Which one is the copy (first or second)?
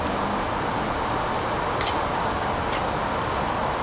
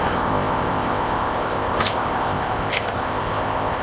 second